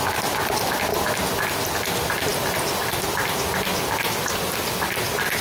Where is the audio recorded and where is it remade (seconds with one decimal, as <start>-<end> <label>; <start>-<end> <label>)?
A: 0.0-5.4 recorded